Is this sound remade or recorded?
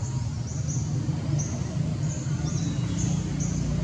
recorded